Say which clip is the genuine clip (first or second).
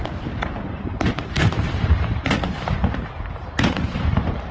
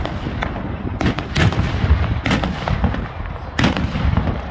second